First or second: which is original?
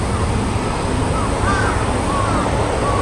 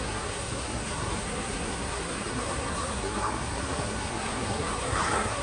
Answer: first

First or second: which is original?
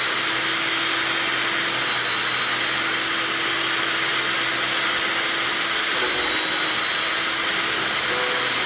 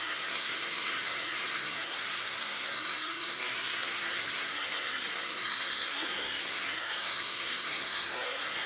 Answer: first